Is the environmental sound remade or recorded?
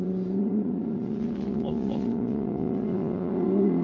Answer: remade